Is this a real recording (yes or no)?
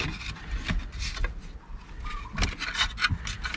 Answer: yes